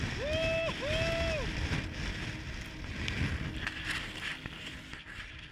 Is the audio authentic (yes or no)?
yes